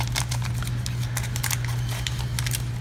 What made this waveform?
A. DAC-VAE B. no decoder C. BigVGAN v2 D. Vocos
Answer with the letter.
B